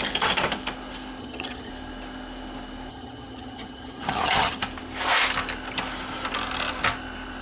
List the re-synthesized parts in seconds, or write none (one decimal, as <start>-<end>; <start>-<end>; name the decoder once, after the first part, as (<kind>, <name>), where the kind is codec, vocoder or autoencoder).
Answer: 1.2-1.7 (vocoder, HiFi-GAN); 2.9-4.6